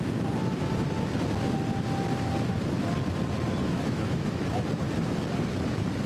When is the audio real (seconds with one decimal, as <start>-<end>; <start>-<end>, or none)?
0.0-3.6; 4.6-6.1